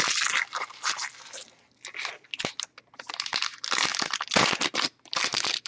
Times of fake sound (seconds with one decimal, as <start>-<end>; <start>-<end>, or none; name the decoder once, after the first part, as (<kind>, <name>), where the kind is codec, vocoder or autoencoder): none